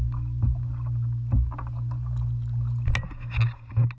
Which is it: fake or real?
real